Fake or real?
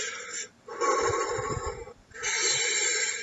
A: real